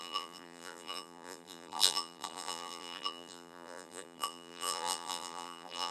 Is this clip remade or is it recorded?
remade